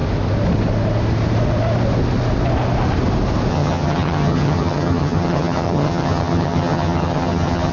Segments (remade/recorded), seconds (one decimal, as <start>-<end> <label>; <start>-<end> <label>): 0.0-3.5 recorded; 3.5-7.7 remade